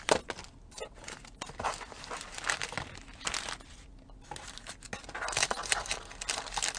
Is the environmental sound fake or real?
real